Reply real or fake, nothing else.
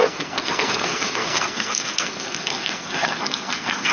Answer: fake